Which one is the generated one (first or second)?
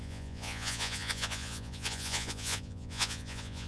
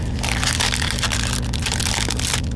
first